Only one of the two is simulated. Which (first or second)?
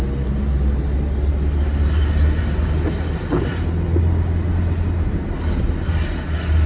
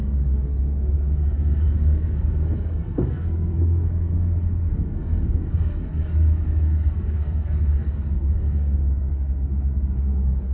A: second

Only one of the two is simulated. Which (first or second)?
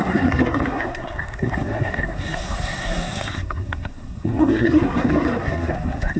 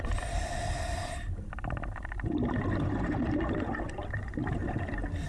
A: first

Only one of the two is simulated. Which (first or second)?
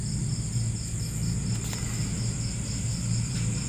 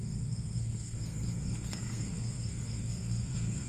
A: second